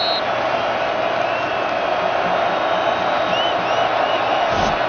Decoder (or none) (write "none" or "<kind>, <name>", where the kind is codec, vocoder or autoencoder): none